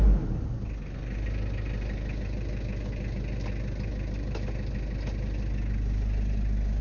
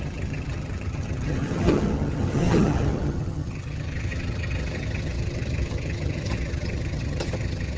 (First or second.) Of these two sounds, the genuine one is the first